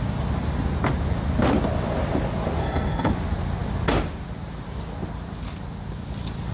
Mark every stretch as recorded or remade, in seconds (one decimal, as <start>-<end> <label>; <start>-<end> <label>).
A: 0.0-2.6 recorded; 2.6-3.1 remade; 3.1-6.5 recorded